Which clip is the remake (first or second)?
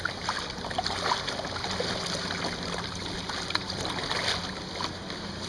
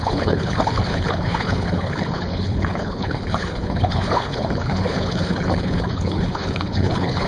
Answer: second